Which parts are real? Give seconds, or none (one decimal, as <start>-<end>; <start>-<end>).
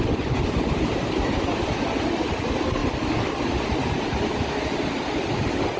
0.0-0.4; 1.8-3.8; 5.0-5.8